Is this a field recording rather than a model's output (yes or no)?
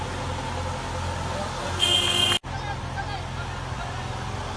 yes